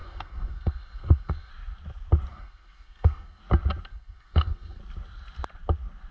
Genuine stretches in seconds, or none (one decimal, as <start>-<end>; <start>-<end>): 1.5-2.3; 3.4-3.9; 4.8-6.1